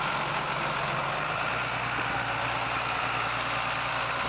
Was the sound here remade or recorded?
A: recorded